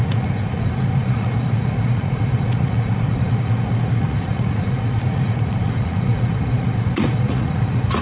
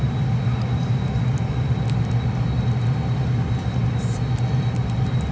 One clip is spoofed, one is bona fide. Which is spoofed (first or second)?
first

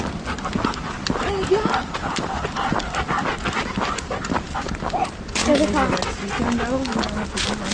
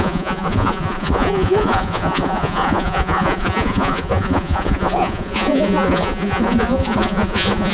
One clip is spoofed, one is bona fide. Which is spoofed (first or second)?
second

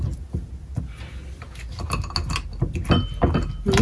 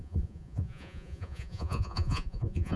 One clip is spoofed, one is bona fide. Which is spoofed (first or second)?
second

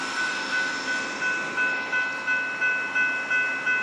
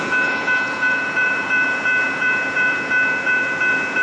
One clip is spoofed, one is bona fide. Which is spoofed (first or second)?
second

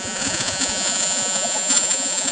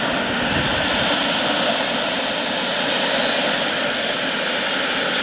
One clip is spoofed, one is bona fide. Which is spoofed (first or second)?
first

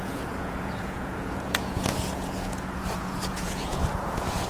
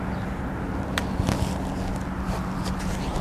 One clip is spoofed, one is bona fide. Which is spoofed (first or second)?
first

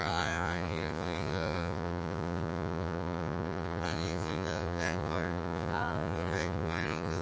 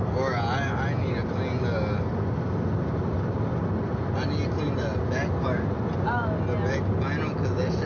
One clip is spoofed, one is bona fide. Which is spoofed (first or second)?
first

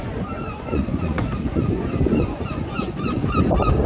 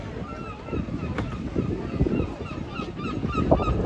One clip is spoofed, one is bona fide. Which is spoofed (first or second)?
first